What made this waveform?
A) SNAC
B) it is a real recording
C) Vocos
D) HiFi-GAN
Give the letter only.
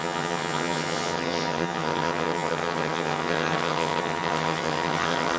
D